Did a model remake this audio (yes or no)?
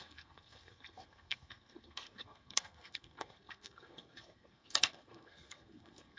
yes